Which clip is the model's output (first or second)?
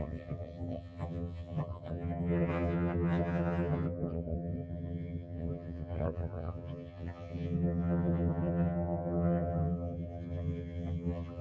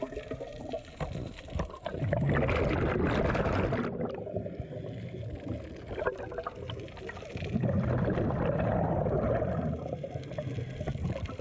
first